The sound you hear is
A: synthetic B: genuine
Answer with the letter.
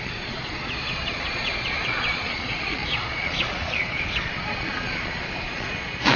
A